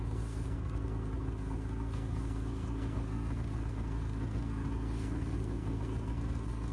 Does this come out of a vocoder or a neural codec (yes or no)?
yes